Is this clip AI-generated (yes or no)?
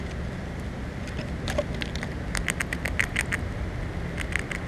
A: no